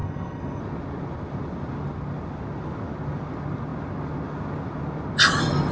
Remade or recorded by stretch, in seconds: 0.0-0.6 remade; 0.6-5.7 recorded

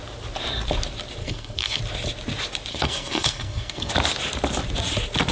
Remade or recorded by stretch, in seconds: 0.0-1.2 recorded; 1.2-1.8 remade; 1.8-2.7 recorded; 2.7-3.9 remade; 3.9-5.3 recorded

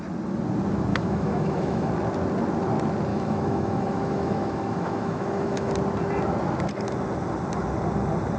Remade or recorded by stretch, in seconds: 0.0-0.9 recorded; 0.9-1.9 remade; 1.9-3.1 recorded; 3.1-5.7 remade; 5.7-8.4 recorded

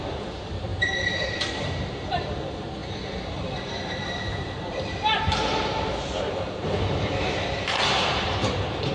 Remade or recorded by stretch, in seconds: 0.0-8.9 remade

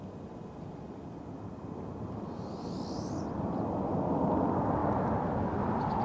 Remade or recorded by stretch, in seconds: 0.0-6.0 recorded

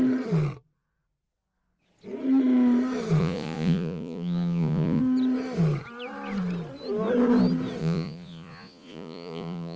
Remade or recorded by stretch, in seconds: 0.0-3.2 recorded; 3.2-5.0 remade; 5.0-7.8 recorded; 7.8-9.8 remade